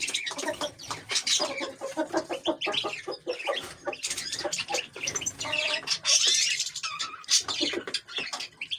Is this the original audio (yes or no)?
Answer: yes